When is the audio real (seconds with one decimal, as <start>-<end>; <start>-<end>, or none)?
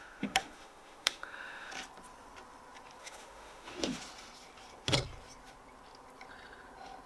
1.7-3.0; 4.0-7.1